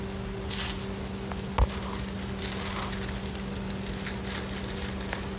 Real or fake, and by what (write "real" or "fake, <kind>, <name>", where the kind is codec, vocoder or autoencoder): real